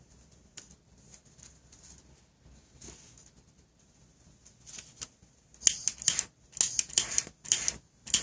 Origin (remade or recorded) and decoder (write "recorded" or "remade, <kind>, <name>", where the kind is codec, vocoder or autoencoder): recorded